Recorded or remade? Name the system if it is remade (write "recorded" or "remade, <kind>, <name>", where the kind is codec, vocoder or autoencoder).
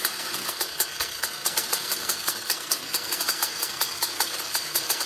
remade, codec, SNAC